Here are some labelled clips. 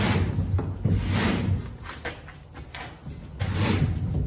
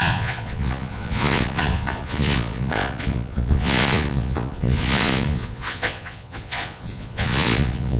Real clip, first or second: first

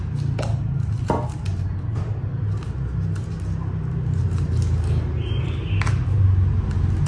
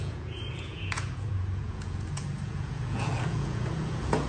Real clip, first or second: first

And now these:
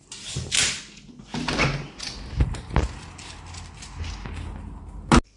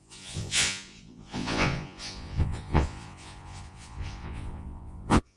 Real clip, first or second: first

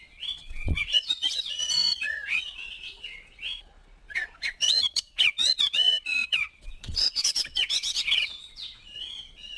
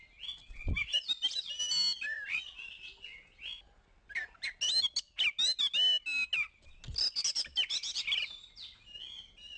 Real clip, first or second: second